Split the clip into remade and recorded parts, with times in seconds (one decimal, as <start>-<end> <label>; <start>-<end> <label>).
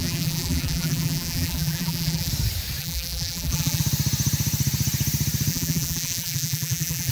0.0-2.3 remade; 2.3-2.8 recorded; 2.8-3.8 remade; 3.8-5.5 recorded; 5.5-7.1 remade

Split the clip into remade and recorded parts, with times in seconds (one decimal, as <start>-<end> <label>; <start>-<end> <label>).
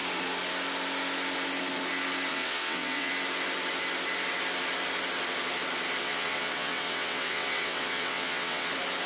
0.0-2.3 recorded; 2.3-3.1 remade; 3.1-6.0 recorded; 6.0-8.7 remade; 8.7-9.1 recorded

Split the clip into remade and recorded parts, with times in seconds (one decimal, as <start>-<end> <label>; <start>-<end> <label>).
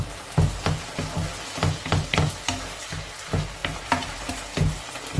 0.0-3.6 recorded; 3.6-4.3 remade; 4.3-5.2 recorded